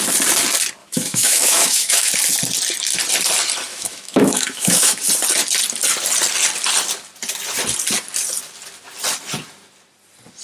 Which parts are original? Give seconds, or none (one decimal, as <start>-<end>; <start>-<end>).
0.0-0.8; 2.1-3.7; 5.0-10.4